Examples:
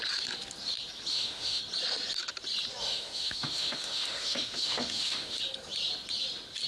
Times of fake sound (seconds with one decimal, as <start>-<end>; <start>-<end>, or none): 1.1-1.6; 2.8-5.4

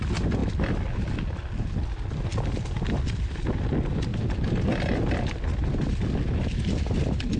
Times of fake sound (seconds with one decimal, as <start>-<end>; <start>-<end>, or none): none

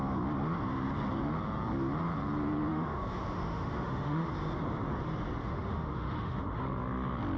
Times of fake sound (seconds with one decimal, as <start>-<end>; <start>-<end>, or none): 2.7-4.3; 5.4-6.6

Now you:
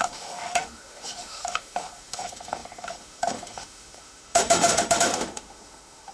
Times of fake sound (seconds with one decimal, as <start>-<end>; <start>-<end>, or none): 0.0-6.1

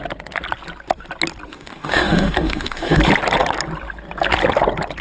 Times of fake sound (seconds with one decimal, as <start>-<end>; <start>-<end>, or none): 1.5-3.0

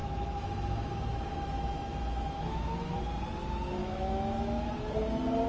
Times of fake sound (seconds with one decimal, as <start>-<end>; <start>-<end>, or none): 0.0-3.0; 3.8-4.7

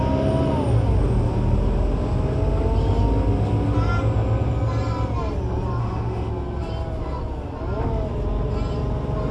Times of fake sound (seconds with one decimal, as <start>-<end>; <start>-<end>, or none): 5.8-6.3

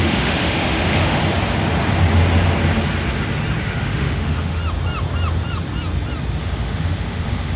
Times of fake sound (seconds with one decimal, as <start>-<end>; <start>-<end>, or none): 0.0-1.2; 3.6-4.6; 6.4-7.6